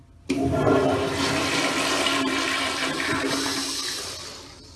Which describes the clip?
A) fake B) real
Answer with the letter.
B